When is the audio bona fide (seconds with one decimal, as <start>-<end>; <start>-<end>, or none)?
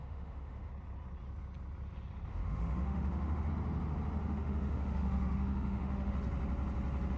0.7-2.3; 3.5-4.2; 6.1-7.2